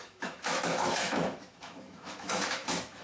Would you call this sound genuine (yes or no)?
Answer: no